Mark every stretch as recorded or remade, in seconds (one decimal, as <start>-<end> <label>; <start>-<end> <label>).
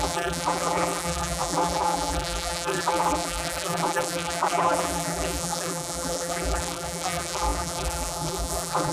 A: 0.0-8.9 remade